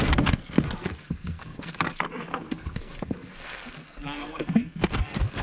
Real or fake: fake